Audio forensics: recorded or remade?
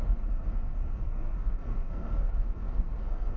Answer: remade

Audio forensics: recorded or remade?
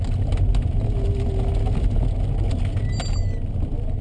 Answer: recorded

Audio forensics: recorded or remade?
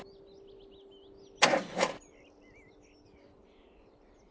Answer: recorded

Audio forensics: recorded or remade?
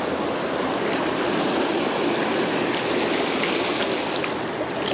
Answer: recorded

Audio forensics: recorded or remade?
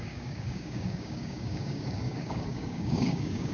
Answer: remade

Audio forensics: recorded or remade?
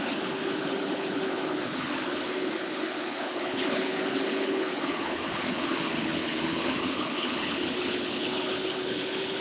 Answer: remade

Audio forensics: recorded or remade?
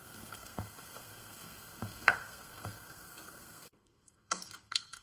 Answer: remade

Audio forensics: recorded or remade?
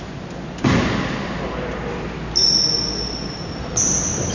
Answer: recorded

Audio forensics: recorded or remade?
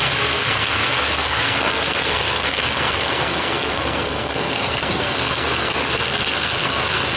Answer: remade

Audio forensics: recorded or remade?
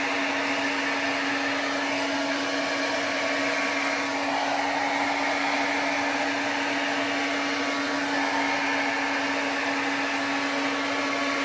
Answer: recorded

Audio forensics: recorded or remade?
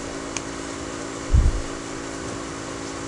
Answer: recorded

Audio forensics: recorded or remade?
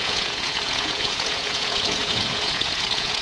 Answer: remade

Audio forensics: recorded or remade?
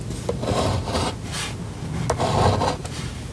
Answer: recorded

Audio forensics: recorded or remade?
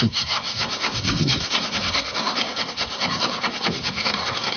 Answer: remade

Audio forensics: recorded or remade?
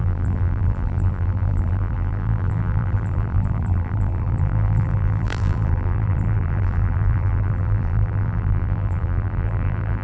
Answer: remade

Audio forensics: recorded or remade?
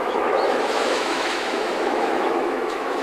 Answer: remade